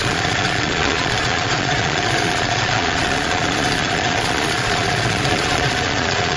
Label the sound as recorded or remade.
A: remade